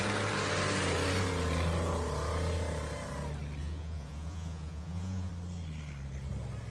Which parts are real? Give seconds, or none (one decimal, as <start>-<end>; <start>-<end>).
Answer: 0.0-3.6; 5.3-6.7